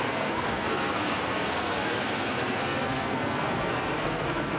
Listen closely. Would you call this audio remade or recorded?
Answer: remade